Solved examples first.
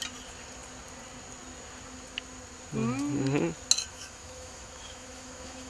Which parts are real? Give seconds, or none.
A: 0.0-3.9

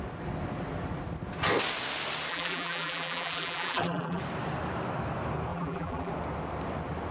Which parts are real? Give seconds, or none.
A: 0.0-2.3; 4.2-5.5; 6.1-7.1

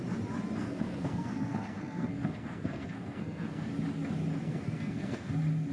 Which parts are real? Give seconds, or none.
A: 0.0-0.6; 3.7-4.4; 5.3-5.7

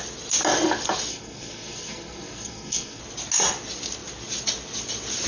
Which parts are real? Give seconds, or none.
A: 0.0-1.1; 3.0-5.3